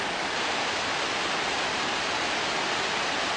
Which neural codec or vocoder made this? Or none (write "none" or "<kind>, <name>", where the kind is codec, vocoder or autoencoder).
none